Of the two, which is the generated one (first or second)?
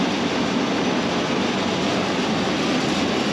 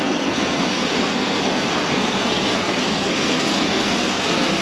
second